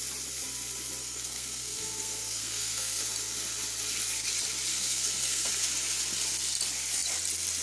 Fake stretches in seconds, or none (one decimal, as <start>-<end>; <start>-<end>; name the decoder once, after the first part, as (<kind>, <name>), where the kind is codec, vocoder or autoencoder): 1.0-3.0 (codec, SNAC); 4.7-5.5

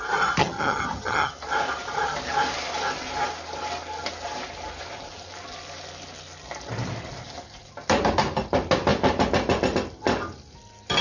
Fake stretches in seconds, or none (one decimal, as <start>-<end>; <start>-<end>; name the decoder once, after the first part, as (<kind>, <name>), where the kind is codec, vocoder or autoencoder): 0.4-1.3 (vocoder, HiFi-GAN)

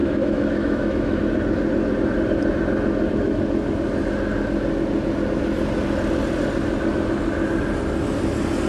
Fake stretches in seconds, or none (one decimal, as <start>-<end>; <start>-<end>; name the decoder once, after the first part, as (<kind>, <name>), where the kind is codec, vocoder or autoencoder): 0.0-1.2 (autoencoder, DAC-VAE)

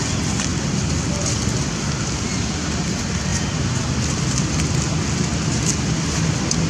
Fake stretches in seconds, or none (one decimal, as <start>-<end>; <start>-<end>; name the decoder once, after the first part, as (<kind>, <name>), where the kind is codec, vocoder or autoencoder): none